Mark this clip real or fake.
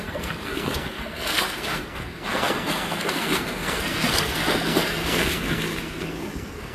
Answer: fake